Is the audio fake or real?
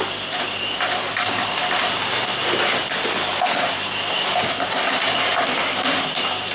real